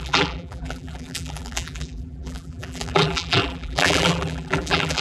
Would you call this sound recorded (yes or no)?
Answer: no